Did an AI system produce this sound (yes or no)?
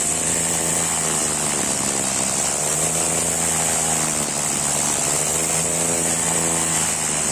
no